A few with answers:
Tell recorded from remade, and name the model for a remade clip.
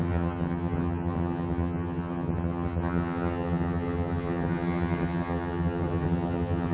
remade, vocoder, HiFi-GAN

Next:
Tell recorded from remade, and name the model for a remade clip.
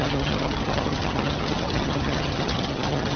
remade, vocoder, HiFi-GAN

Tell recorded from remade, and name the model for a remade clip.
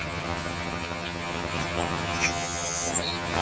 remade, vocoder, HiFi-GAN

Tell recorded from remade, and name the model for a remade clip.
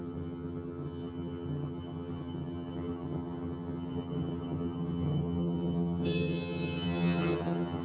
remade, vocoder, HiFi-GAN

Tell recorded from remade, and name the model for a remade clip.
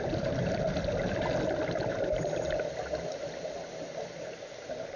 recorded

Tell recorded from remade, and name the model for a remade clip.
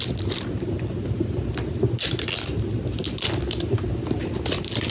recorded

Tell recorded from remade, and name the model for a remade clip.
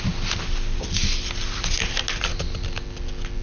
recorded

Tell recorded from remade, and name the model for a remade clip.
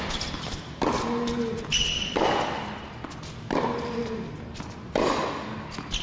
recorded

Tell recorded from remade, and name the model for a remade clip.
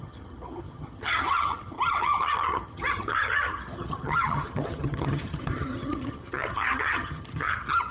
remade, vocoder, HiFi-GAN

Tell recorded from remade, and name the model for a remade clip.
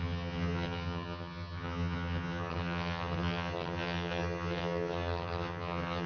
remade, vocoder, HiFi-GAN